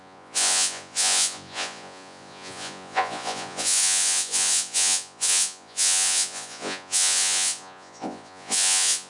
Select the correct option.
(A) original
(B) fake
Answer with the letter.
B